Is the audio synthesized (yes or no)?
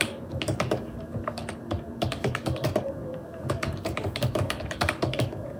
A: yes